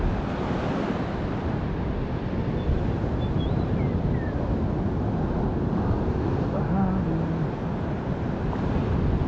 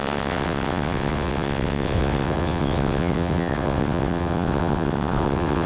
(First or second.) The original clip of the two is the first